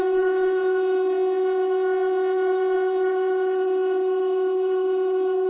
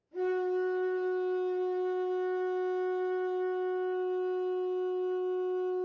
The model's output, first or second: first